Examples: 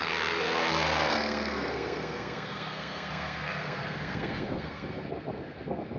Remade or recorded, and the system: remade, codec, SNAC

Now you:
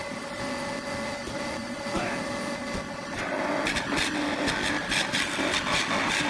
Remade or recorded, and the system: recorded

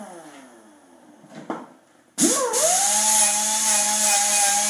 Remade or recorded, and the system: recorded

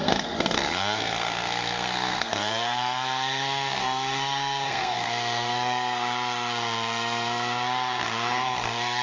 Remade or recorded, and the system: remade, codec, SNAC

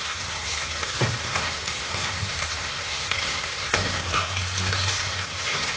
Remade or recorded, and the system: remade, codec, SNAC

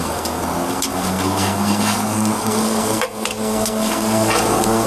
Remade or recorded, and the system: remade, codec, SNAC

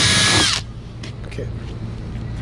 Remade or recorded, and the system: recorded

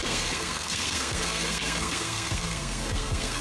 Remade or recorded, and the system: remade, codec, SNAC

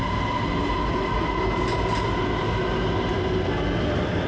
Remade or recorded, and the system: recorded